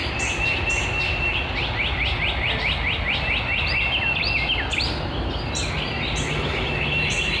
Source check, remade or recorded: recorded